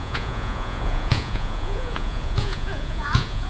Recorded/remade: remade